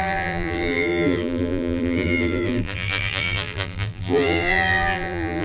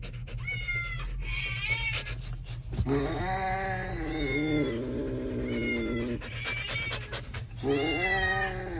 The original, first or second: second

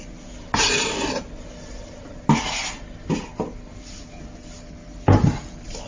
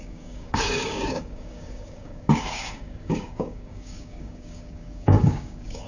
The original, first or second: first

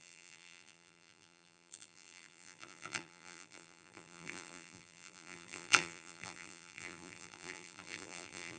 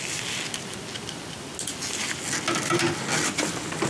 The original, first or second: second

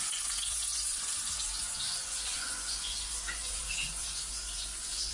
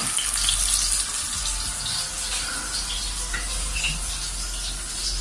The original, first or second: second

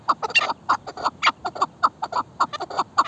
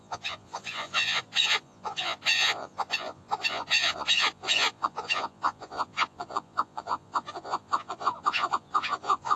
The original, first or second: first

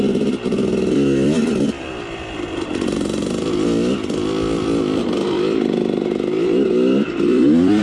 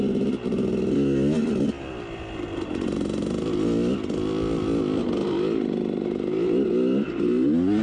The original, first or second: second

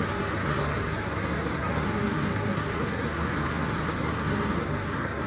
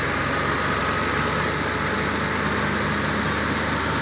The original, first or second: second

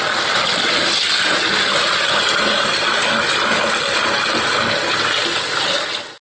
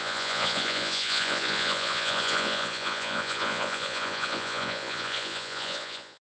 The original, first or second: first